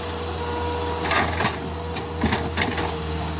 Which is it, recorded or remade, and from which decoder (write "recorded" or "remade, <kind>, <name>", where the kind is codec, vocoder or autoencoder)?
recorded